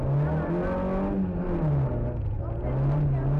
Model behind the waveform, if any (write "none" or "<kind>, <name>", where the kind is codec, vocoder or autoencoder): none